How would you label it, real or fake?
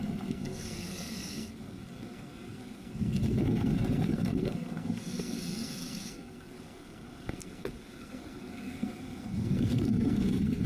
fake